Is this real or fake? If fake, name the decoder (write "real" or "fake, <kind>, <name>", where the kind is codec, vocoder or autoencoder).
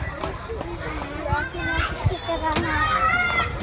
real